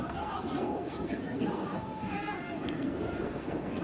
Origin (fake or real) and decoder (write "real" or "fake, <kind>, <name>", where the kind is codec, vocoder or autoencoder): fake, codec, SNAC